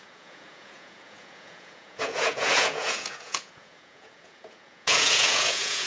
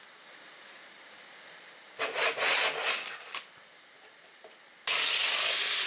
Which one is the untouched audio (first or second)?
second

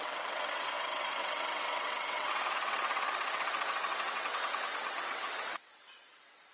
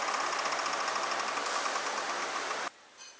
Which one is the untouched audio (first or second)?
second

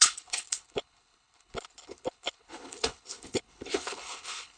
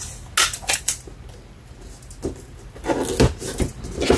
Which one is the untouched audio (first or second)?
second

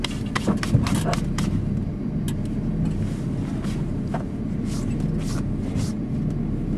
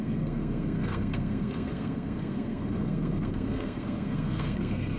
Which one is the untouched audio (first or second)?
first